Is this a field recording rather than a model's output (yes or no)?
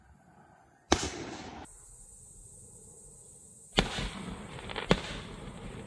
yes